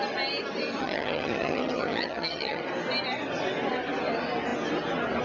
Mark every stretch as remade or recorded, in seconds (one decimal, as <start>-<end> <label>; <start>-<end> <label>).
0.0-0.8 recorded; 0.8-2.6 remade; 2.6-5.2 recorded